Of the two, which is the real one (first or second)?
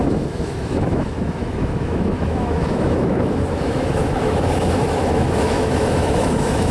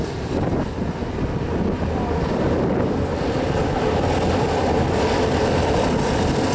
second